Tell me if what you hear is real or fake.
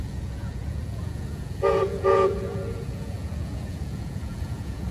fake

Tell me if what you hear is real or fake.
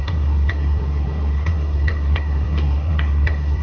fake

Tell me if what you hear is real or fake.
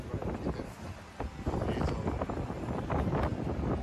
real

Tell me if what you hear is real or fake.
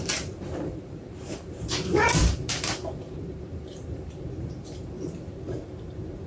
fake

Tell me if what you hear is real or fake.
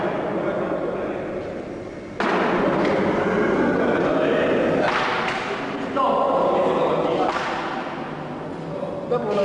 real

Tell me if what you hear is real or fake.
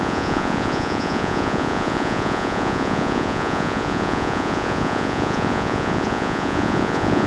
fake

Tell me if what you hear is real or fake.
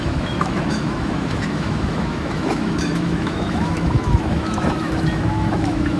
fake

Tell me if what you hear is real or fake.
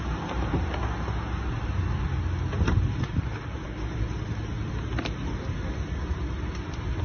real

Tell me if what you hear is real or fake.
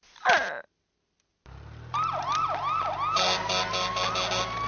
real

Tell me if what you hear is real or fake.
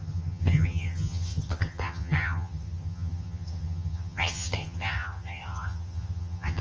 fake